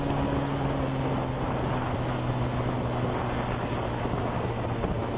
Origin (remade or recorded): recorded